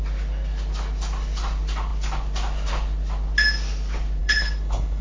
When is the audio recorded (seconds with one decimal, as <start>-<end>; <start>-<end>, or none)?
0.0-4.2